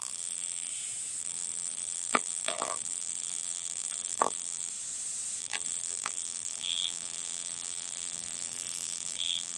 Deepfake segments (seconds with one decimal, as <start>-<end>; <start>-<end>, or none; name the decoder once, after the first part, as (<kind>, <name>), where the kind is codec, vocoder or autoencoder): 0.0-0.7 (vocoder, BigVGAN v2); 1.2-4.7; 5.4-9.6